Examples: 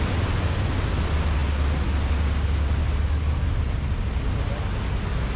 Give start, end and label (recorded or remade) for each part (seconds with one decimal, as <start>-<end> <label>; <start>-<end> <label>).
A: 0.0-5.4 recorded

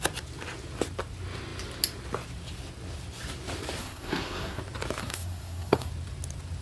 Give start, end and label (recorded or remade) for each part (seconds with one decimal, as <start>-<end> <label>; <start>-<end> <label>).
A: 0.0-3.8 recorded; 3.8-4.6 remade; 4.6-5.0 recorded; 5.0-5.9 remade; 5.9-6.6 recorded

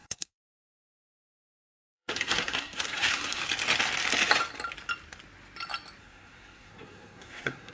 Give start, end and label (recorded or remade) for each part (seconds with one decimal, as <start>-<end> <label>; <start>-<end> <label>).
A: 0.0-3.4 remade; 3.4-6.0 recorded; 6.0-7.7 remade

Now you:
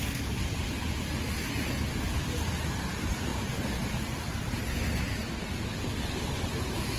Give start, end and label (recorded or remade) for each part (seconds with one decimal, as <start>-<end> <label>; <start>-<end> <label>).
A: 0.0-7.0 recorded

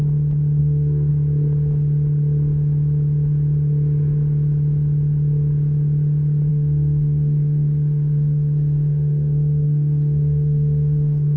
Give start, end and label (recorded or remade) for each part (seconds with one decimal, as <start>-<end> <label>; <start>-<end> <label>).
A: 0.0-0.6 recorded; 0.6-1.1 remade; 1.1-6.5 recorded; 6.5-11.4 remade

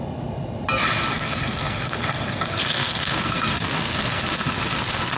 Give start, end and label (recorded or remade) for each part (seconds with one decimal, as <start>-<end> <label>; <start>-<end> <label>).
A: 0.0-1.1 recorded; 1.1-4.2 remade; 4.2-5.2 recorded